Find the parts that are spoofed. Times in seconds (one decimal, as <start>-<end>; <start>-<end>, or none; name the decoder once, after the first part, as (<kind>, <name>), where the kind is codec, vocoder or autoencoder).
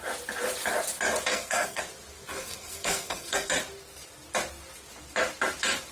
1.3-1.8 (codec, SNAC); 2.3-3.5